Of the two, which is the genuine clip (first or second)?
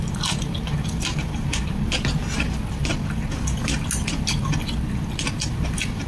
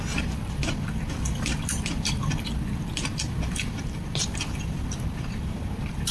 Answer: first